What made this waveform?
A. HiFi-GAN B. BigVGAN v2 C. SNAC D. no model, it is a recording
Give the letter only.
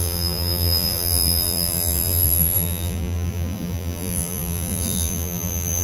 B